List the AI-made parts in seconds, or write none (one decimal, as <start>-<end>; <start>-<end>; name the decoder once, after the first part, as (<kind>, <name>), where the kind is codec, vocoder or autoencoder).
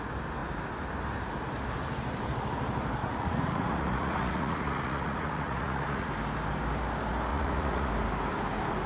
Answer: 3.0-6.1 (vocoder, Vocos); 7.3-7.9